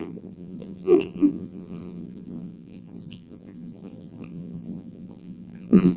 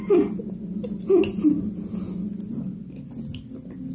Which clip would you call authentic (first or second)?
second